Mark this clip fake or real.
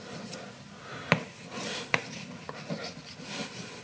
real